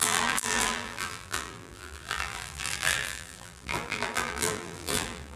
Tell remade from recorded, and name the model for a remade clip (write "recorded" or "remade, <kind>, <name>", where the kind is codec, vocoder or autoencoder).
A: remade, vocoder, BigVGAN v2